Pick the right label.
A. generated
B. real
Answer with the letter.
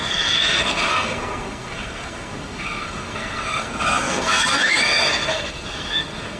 A